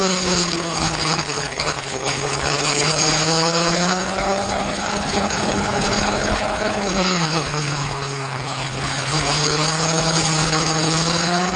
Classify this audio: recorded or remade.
remade